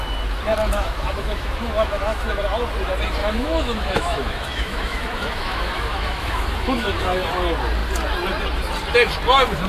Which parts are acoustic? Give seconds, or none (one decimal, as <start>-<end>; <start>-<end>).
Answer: 0.0-0.6; 2.4-3.2; 7.0-9.7